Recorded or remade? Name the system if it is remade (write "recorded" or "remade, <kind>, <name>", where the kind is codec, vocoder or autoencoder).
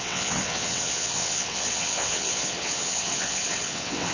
remade, vocoder, WaveNeXt